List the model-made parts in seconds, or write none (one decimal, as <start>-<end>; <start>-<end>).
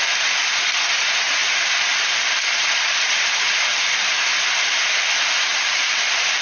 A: 1.4-4.7